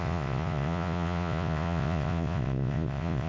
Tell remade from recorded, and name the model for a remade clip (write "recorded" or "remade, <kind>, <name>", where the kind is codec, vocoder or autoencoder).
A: remade, vocoder, Vocos